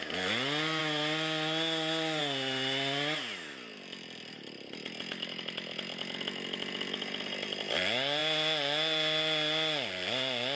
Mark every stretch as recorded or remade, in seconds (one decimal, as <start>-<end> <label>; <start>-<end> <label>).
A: 0.0-10.6 recorded